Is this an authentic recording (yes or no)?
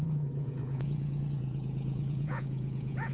no